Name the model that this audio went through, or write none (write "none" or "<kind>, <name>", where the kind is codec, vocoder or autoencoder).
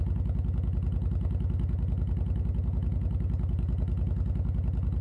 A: none